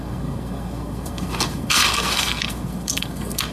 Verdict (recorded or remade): remade